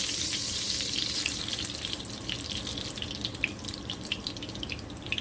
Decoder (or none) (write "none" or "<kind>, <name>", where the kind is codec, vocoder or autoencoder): vocoder, BigVGAN v2